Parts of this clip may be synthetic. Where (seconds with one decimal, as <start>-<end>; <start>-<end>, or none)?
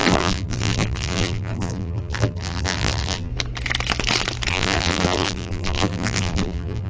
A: 0.0-3.3; 4.5-6.9